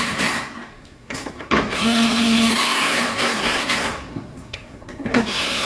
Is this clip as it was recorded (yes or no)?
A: no